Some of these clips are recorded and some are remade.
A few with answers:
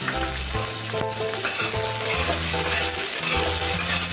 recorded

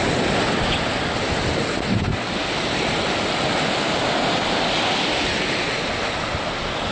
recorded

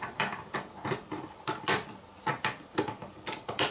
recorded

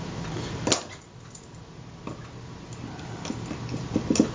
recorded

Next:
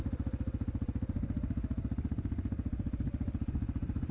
recorded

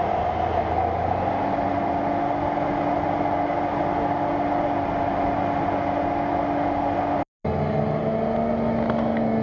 recorded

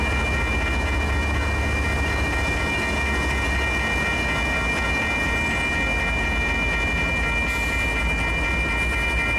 recorded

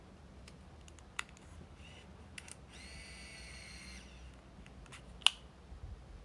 recorded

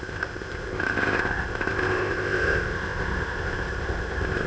remade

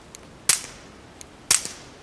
recorded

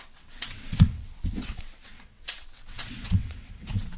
remade